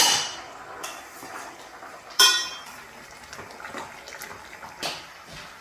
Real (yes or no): no